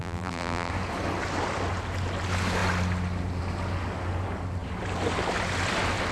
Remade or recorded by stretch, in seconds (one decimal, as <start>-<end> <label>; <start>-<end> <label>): 0.0-0.7 remade; 0.7-6.1 recorded